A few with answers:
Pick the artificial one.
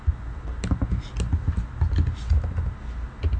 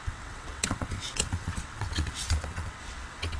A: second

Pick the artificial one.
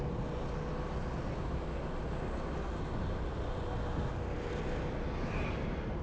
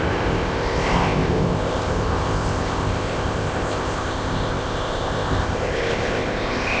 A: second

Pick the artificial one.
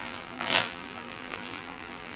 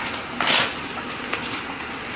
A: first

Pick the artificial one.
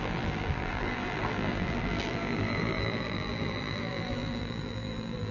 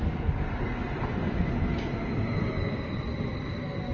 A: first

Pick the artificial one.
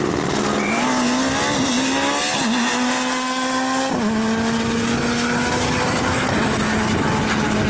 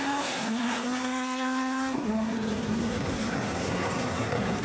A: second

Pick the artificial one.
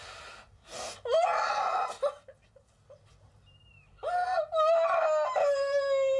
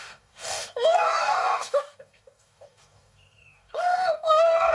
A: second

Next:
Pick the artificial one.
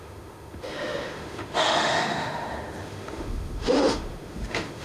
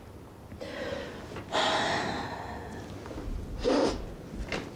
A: first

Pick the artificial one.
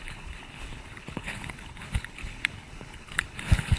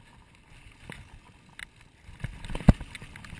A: first